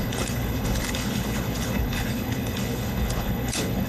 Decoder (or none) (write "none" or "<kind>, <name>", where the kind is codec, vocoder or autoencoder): codec, HILCodec